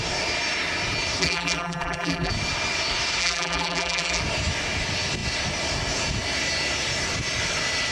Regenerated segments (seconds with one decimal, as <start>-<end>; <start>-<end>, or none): 1.2-2.3; 3.2-4.2

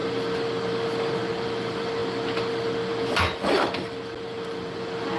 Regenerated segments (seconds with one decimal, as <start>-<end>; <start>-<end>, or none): none

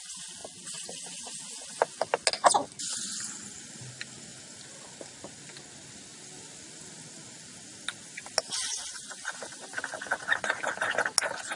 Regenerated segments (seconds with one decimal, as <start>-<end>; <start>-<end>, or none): none

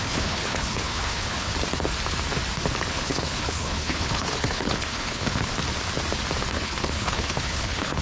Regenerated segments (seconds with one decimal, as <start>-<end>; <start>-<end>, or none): 0.0-1.5; 2.9-5.5; 6.5-8.0